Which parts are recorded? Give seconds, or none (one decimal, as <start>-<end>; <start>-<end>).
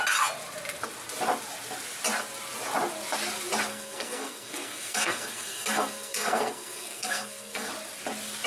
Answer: 0.0-3.7; 7.7-8.5